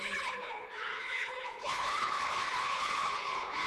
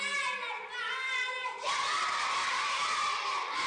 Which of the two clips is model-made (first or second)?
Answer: first